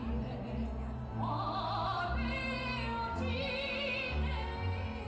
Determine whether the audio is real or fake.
real